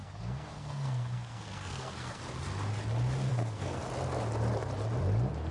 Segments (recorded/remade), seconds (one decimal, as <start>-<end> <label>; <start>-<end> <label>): 0.0-2.2 remade; 2.2-3.3 recorded; 3.3-3.8 remade; 3.8-5.5 recorded

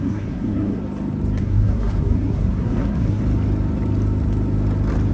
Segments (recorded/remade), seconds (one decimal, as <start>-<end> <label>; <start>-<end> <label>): 0.0-0.8 remade; 0.8-1.4 recorded; 1.4-3.2 remade; 3.2-5.1 recorded